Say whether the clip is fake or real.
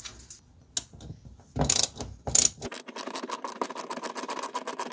real